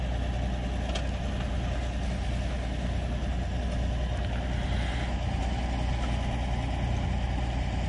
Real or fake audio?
real